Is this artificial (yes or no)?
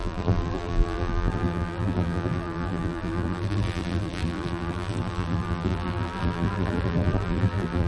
yes